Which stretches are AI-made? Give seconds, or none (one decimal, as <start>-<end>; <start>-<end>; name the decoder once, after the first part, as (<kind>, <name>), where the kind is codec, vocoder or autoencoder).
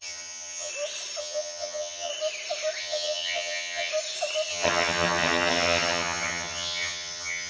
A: 0.0-0.7 (vocoder, HiFi-GAN); 1.2-2.1; 2.8-3.9; 4.5-7.5